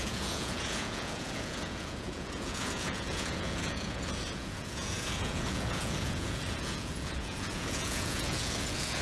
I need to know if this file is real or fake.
fake